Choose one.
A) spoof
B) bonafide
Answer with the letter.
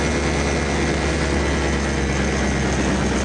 B